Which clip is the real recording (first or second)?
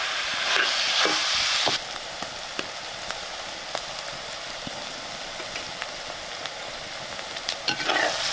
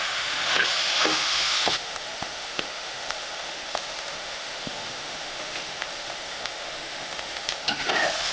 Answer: first